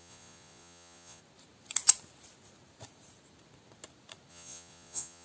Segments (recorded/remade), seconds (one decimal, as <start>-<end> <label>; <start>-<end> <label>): 0.0-1.2 remade; 1.2-4.3 recorded; 4.3-5.2 remade